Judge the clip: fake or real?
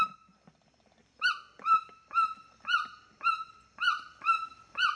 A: fake